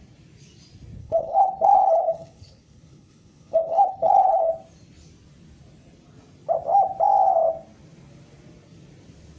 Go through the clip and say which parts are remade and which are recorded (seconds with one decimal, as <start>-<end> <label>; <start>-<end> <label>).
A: 0.0-1.0 recorded; 1.0-4.5 remade; 4.5-9.4 recorded